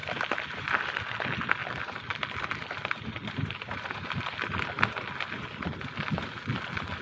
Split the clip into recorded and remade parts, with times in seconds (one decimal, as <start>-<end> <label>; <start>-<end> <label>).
0.0-1.6 recorded; 1.6-3.9 remade; 3.9-7.0 recorded

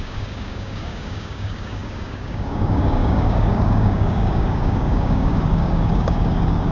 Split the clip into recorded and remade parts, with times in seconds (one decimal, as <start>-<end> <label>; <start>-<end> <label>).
0.0-6.7 remade

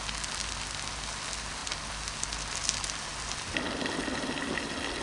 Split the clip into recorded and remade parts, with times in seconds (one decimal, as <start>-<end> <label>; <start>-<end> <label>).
0.0-5.0 recorded

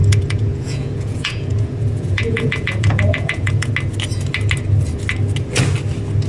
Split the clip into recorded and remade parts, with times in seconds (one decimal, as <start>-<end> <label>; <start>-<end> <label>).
0.0-3.7 remade; 3.7-6.3 recorded

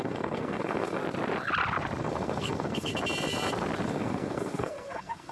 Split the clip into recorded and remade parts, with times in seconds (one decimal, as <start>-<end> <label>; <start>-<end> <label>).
0.0-1.0 remade; 1.0-2.0 recorded; 2.0-2.9 remade; 2.9-3.9 recorded; 3.9-5.3 remade

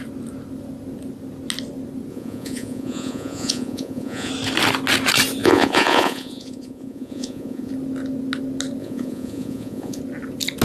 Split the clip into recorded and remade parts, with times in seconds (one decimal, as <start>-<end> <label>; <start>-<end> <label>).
0.0-2.1 recorded; 2.1-4.3 remade; 4.3-5.4 recorded; 5.4-7.7 remade; 7.7-8.8 recorded; 8.8-10.0 remade; 10.0-10.6 recorded

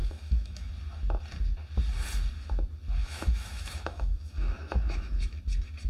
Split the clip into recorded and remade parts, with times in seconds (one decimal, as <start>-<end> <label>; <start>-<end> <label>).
0.0-0.7 remade; 0.7-3.0 recorded; 3.0-5.4 remade; 5.4-5.9 recorded

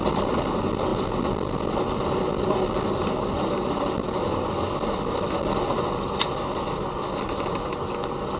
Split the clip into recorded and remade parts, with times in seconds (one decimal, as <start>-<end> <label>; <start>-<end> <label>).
0.0-8.4 recorded